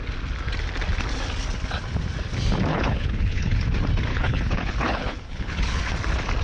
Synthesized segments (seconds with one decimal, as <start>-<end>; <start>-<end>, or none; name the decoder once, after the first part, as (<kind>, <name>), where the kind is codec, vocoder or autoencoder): 2.7-3.6 (codec, HILCodec); 4.1-5.8